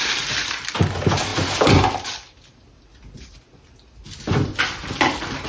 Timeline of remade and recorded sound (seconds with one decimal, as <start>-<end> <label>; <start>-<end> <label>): 0.0-5.5 recorded